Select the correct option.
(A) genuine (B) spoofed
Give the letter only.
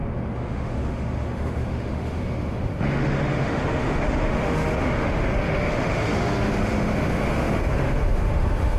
B